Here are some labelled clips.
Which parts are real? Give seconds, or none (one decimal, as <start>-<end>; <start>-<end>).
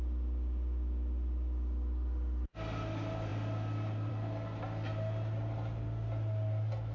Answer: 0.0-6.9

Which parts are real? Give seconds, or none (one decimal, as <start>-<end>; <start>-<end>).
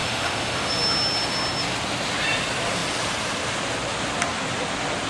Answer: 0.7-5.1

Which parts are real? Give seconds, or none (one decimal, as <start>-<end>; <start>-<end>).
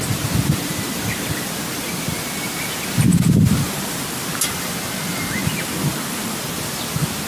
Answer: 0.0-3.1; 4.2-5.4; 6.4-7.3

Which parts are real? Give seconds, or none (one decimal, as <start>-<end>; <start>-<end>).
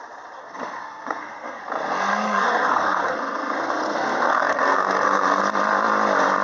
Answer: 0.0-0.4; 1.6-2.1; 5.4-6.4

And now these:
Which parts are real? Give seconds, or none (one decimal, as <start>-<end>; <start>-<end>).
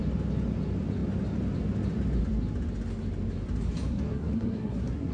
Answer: 0.0-3.9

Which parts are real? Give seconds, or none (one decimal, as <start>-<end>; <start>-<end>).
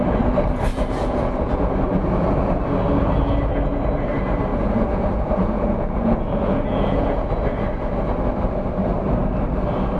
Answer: 0.0-0.7; 2.6-4.5; 7.3-10.0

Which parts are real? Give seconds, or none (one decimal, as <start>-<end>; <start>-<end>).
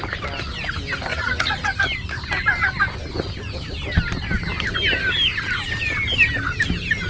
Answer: 0.0-1.1; 1.8-7.1